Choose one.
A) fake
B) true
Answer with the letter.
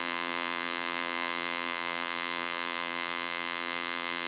A